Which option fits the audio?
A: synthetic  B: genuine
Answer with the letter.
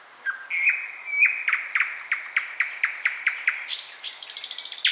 B